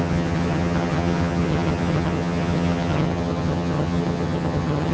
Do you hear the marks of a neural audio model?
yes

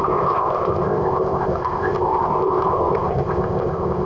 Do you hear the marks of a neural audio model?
yes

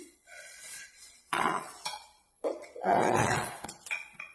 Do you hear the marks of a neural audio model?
yes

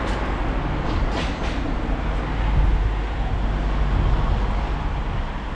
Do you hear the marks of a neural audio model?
no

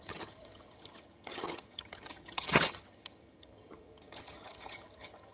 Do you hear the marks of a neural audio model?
yes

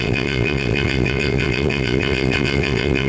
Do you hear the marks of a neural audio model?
yes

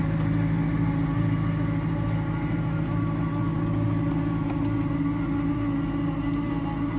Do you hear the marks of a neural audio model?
no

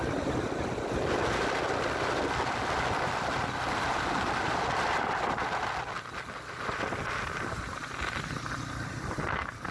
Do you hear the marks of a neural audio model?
no